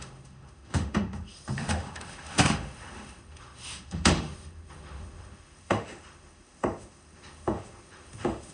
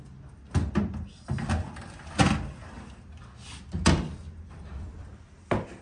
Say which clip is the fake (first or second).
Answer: first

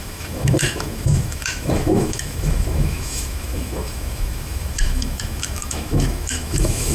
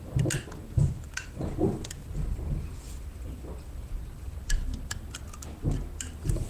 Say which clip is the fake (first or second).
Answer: first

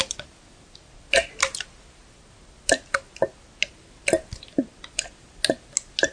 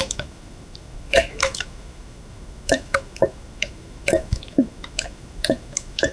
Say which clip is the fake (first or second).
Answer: second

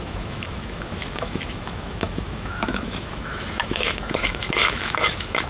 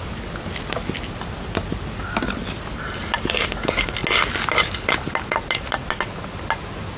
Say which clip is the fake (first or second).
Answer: first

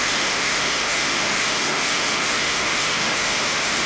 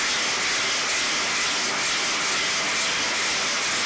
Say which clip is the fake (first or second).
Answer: first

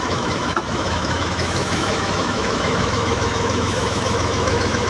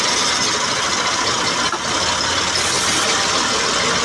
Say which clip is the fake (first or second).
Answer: first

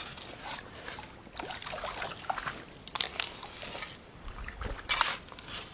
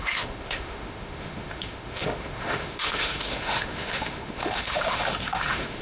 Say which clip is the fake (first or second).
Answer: second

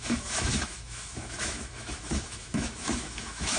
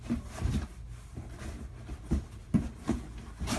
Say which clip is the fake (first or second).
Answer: first